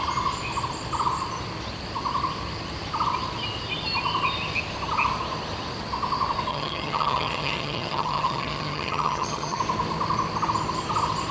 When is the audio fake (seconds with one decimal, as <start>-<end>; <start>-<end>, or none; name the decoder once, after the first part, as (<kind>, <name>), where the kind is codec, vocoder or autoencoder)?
6.5-9.6 (vocoder, HiFi-GAN)